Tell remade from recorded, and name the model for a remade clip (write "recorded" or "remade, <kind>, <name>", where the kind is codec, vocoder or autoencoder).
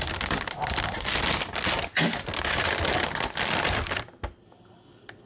recorded